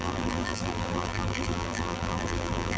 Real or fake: fake